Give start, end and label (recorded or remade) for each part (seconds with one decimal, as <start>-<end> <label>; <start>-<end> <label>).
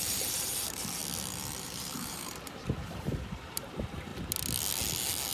0.0-1.0 remade; 1.0-1.6 recorded; 1.6-4.1 remade; 4.1-5.3 recorded